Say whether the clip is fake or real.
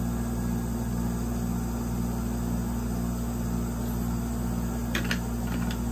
real